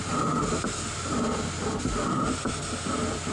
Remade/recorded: recorded